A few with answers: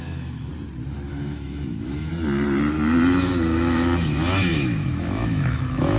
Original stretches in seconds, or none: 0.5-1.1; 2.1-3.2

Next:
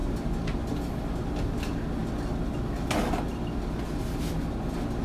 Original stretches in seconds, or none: 0.0-5.0

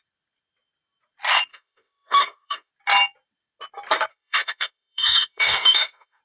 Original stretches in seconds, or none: 0.0-1.5; 2.7-4.1

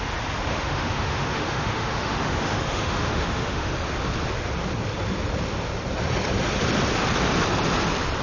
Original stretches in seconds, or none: 0.0-0.5; 3.7-8.2